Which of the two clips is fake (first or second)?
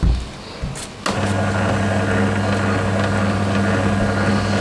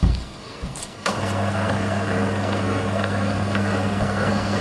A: second